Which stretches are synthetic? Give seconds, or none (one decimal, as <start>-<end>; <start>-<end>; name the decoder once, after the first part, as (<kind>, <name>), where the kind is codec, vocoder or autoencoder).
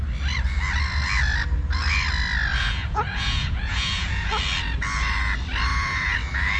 2.6-4.3 (vocoder, Vocos)